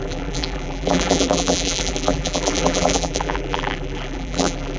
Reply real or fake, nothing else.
fake